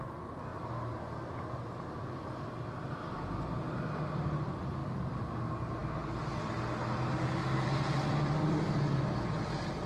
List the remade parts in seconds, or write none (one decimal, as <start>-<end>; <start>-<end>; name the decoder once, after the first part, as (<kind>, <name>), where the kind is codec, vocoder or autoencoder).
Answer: 0.5-1.0 (vocoder, BigVGAN v2); 4.8-5.3; 7.4-8.8